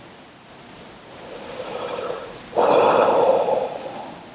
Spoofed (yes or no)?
yes